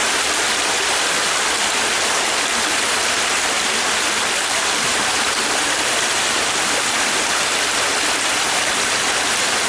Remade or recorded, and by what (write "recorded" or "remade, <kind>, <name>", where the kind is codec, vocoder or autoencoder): recorded